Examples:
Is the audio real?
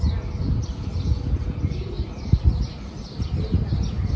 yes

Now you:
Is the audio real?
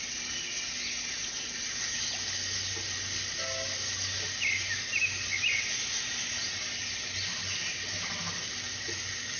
yes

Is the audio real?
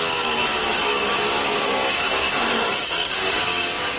no